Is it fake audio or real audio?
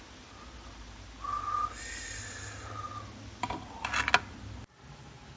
real